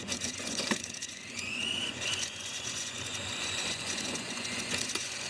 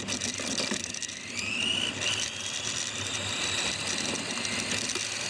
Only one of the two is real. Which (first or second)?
second